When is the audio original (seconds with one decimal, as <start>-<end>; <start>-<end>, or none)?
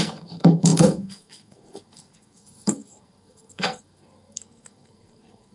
none